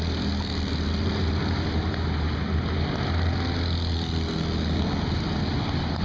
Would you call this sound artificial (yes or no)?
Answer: no